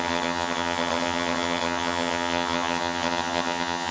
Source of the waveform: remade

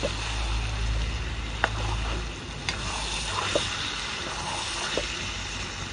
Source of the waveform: recorded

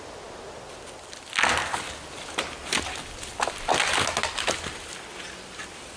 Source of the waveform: recorded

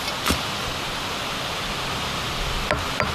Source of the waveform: recorded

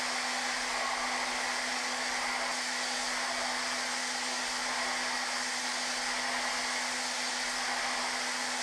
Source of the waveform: recorded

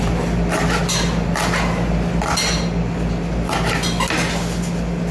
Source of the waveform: recorded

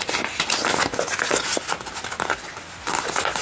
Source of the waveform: recorded